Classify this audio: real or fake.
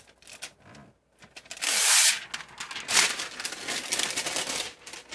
real